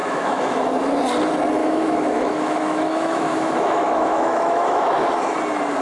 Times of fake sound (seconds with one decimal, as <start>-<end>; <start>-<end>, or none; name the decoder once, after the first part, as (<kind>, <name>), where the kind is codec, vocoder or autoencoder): 0.0-0.6 (autoencoder, DAC-VAE); 1.6-5.1